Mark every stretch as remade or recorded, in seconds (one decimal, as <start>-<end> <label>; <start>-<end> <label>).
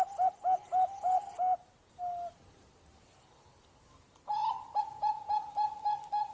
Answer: 0.0-6.3 recorded